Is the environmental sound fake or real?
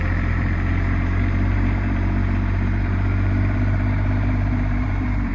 fake